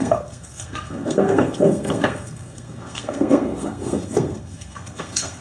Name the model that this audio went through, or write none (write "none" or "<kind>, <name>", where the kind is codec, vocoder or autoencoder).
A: codec, SNAC